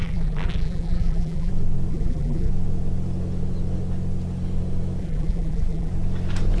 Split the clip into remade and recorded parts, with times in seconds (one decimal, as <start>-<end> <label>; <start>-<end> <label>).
0.0-1.5 remade; 1.5-1.9 recorded; 1.9-2.5 remade; 2.5-5.0 recorded; 5.0-5.9 remade; 5.9-6.6 recorded